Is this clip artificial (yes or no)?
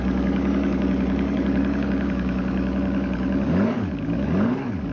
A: yes